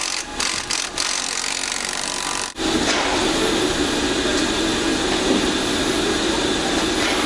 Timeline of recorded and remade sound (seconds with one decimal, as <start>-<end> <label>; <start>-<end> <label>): 0.0-7.3 recorded